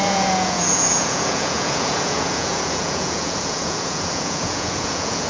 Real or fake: fake